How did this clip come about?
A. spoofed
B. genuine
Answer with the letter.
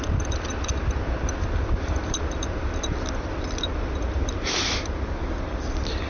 B